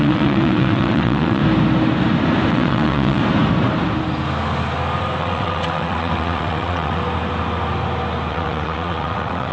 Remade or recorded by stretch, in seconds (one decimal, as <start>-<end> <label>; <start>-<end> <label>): 0.0-1.4 remade; 1.4-2.5 recorded; 2.5-3.2 remade; 3.2-5.2 recorded; 5.2-7.0 remade; 7.0-8.3 recorded; 8.3-9.5 remade